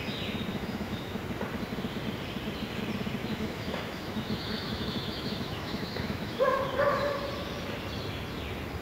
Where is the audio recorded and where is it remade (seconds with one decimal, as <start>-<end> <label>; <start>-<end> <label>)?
0.0-0.5 recorded; 0.5-1.2 remade; 1.2-3.2 recorded; 3.2-6.6 remade; 6.6-8.8 recorded